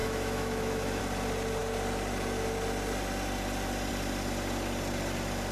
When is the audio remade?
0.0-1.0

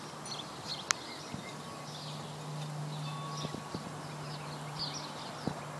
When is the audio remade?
none

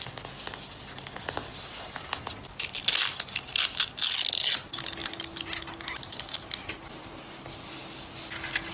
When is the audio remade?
none

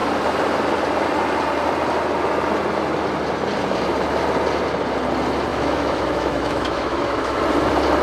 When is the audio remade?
5.5-7.4

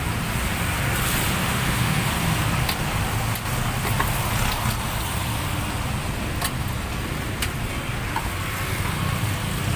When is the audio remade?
1.4-2.1

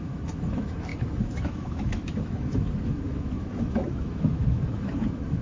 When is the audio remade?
0.0-5.4

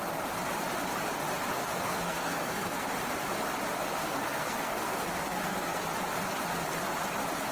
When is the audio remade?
1.6-2.9; 4.0-5.8